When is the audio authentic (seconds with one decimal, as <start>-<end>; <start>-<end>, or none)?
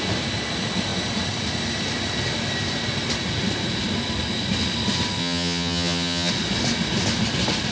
0.0-5.2; 6.3-7.7